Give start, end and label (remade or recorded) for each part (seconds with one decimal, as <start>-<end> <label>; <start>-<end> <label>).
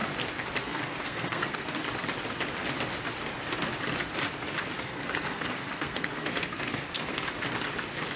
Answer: 0.0-0.6 recorded; 0.6-1.8 remade; 1.8-4.8 recorded; 4.8-7.2 remade; 7.2-8.2 recorded